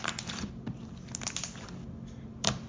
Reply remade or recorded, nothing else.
recorded